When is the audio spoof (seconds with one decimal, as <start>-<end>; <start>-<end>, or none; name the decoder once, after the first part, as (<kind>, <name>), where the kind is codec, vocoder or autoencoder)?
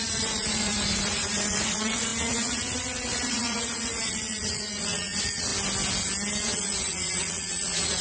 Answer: 0.0-5.5 (vocoder, Vocos); 6.4-8.0